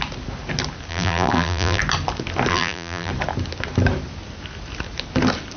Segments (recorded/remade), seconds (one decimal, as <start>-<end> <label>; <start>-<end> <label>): 0.0-0.9 recorded; 0.9-1.8 remade; 1.8-2.5 recorded; 2.5-3.1 remade; 3.1-5.6 recorded